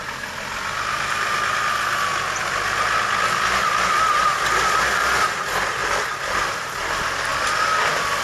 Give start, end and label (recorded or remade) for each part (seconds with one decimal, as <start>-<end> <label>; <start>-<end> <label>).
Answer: 0.0-8.2 recorded